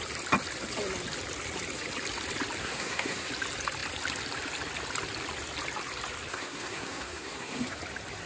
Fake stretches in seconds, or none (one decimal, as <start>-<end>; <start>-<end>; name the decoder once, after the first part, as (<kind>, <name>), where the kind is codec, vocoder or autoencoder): 2.6-3.3 (codec, SNAC); 6.3-7.8

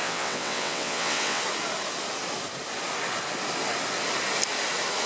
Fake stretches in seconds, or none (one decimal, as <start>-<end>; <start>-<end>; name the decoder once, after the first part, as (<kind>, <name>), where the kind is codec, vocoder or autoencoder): 0.0-1.4 (vocoder, WaveNeXt)

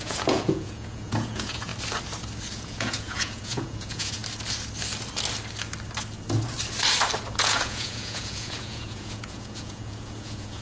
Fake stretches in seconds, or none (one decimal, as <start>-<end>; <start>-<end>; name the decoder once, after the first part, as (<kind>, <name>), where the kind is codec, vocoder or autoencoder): 0.0-1.7 (vocoder, Vocos); 2.5-4.2; 7.3-10.6

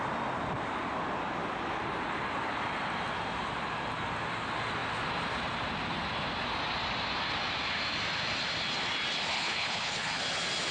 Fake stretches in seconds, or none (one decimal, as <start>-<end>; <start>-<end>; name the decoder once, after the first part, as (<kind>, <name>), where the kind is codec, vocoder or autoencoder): 9.3-10.2 (codec, HILCodec)

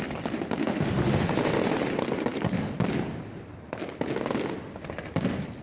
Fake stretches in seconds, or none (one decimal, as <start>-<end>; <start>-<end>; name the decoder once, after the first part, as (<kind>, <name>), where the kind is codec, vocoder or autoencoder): 0.6-1.3 (autoencoder, DAC-VAE)

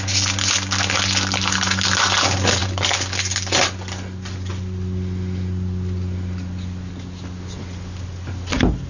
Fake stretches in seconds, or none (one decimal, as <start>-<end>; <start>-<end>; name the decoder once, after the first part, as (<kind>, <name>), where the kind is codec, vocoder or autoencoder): none

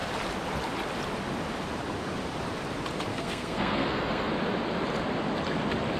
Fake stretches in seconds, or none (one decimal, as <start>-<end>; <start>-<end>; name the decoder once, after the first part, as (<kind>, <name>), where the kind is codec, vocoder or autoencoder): 3.1-4.3 (codec, SNAC)